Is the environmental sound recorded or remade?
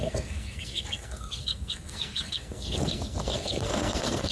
remade